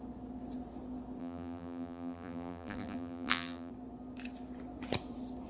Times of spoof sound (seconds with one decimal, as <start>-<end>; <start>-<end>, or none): 1.2-3.7